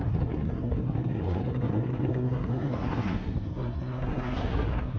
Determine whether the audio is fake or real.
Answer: fake